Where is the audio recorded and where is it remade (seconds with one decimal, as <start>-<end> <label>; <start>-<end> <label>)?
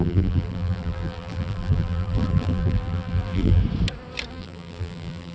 0.0-3.6 remade; 3.6-4.3 recorded; 4.3-5.3 remade